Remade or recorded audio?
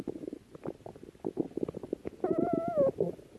recorded